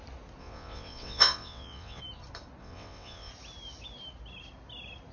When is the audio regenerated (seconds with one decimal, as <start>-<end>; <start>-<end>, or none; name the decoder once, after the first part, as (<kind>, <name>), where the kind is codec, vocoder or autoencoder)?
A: 0.4-2.0 (vocoder, WaveNeXt); 2.6-3.3